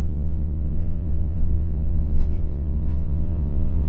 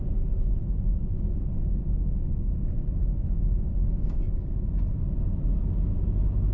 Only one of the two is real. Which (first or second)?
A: second